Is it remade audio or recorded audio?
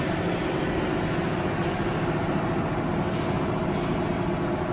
recorded